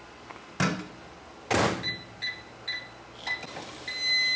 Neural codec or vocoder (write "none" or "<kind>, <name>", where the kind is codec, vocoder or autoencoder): none